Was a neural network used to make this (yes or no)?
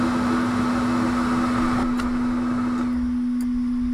no